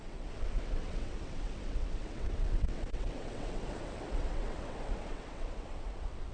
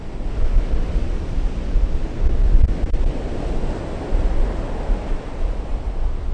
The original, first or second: second